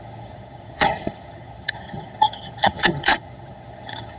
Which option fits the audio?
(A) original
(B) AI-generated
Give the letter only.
B